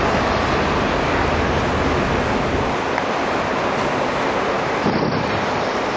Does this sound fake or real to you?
real